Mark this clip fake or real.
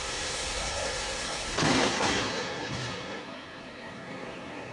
fake